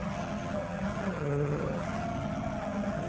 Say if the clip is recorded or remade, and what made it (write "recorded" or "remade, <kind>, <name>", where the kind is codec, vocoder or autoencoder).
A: remade, vocoder, HiFi-GAN